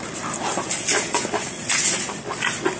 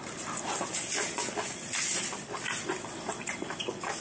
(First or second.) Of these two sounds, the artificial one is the second